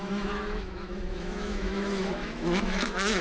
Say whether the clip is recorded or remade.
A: remade